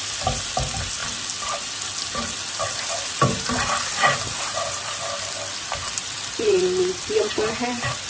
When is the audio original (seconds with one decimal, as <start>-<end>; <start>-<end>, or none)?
1.0-2.8